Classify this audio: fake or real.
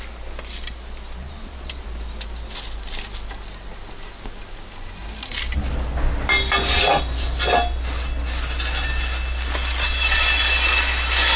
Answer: real